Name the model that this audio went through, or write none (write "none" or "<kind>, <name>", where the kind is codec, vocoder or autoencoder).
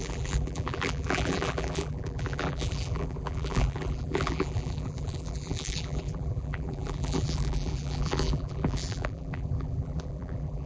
vocoder, BigVGAN v2